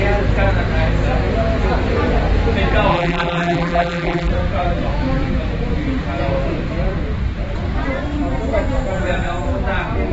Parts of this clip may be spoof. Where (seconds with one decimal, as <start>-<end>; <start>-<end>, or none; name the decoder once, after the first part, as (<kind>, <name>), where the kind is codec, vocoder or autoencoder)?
2.9-4.3 (vocoder, BigVGAN v2)

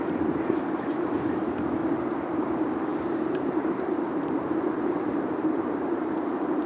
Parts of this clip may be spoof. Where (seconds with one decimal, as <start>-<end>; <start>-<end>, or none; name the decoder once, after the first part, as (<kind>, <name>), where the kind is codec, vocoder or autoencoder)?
0.0-1.8 (vocoder, BigVGAN v2); 2.5-6.7

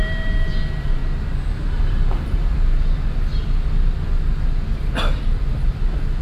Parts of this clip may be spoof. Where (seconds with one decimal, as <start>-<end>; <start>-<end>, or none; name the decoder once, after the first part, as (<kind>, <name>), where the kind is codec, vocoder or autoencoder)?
0.0-1.0 (vocoder, BigVGAN v2); 1.7-2.5

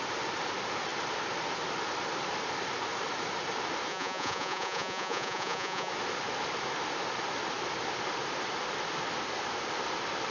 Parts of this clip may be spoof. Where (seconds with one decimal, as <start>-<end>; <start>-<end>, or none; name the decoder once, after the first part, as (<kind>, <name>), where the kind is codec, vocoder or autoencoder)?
3.9-5.9 (vocoder, Vocos)